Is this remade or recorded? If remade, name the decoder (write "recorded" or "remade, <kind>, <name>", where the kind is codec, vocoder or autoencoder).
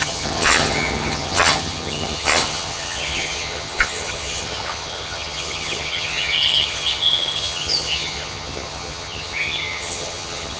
remade, vocoder, HiFi-GAN